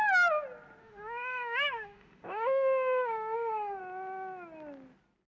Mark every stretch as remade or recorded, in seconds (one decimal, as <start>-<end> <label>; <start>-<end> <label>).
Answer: 0.0-0.8 recorded; 0.8-3.8 remade; 3.8-5.3 recorded